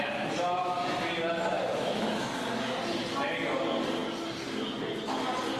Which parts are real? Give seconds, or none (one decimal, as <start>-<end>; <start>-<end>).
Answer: 0.0-1.5; 2.4-5.6